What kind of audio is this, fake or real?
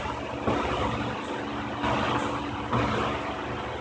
real